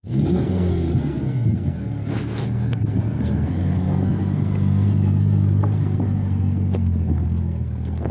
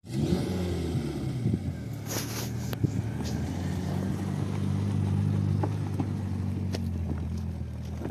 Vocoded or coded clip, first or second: first